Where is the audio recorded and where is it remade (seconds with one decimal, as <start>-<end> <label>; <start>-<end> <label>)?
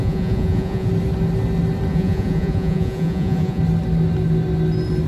0.0-0.9 remade; 0.9-1.9 recorded; 1.9-3.6 remade; 3.6-5.1 recorded